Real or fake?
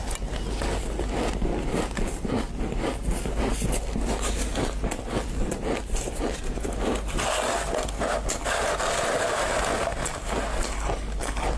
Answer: real